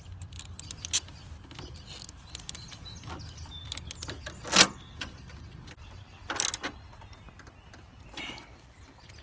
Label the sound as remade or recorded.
recorded